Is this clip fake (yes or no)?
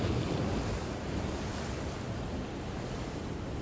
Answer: no